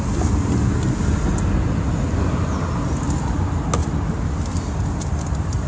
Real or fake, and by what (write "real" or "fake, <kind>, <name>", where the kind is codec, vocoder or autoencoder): real